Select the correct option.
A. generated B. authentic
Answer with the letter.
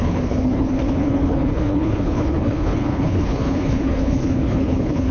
A